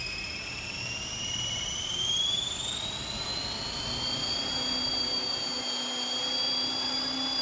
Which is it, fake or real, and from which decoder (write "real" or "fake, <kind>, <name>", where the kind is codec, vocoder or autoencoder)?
real